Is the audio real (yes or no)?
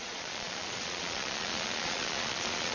no